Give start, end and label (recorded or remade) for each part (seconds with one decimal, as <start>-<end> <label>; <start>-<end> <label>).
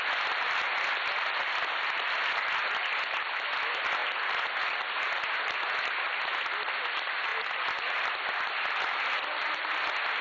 0.0-10.2 recorded